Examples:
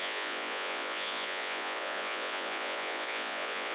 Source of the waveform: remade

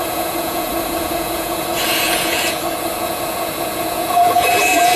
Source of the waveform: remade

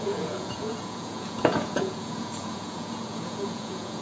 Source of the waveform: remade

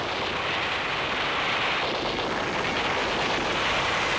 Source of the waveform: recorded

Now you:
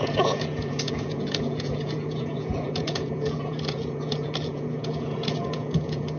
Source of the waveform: remade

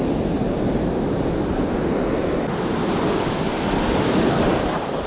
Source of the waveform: recorded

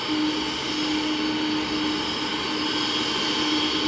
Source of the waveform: recorded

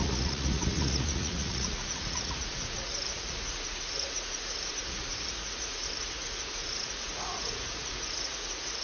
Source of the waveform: remade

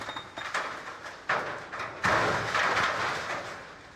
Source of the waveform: recorded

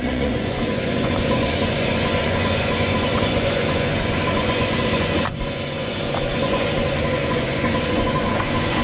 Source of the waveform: remade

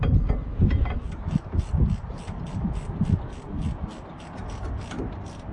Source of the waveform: recorded